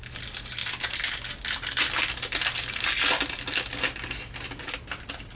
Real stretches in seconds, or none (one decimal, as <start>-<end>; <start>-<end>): 0.0-5.4